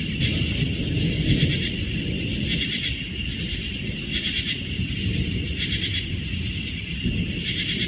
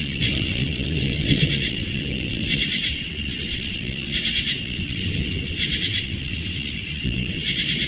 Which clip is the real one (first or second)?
first